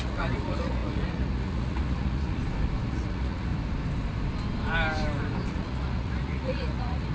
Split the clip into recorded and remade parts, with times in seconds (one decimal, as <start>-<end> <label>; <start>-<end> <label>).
0.0-2.4 remade; 2.4-2.9 recorded; 2.9-3.5 remade; 3.5-5.5 recorded; 5.5-7.1 remade